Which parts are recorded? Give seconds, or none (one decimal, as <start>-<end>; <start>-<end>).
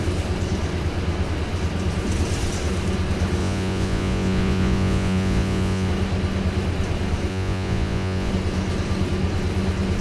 0.0-3.4; 5.9-7.3; 8.3-10.0